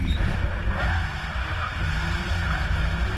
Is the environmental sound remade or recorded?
recorded